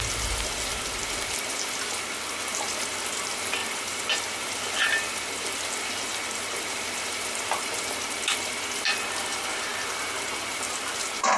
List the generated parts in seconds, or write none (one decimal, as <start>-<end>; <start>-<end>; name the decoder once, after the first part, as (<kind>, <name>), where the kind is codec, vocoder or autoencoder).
none